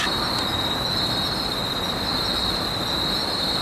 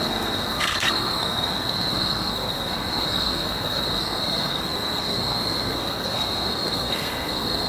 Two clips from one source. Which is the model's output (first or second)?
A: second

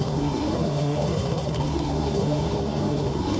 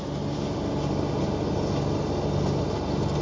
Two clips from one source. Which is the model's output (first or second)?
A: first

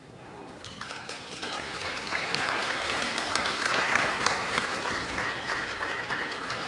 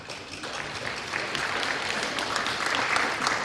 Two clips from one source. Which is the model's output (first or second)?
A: first